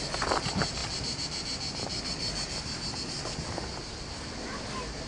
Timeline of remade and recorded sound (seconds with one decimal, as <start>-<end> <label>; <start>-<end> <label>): 0.0-5.1 recorded